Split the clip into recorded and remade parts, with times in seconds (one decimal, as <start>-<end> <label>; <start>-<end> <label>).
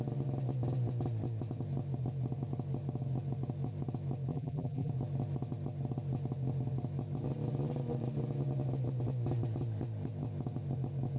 0.0-4.3 recorded; 4.3-4.9 remade; 4.9-11.2 recorded